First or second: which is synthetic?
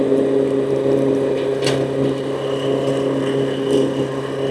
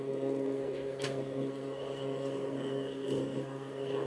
second